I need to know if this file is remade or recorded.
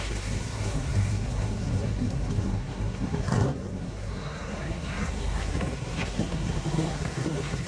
remade